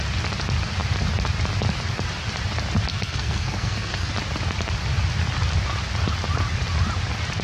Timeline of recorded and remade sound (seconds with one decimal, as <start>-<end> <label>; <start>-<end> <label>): 0.0-2.9 recorded; 2.9-4.1 remade; 4.1-7.4 recorded